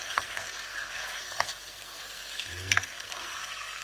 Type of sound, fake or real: fake